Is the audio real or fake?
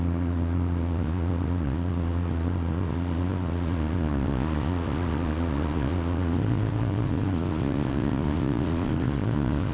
fake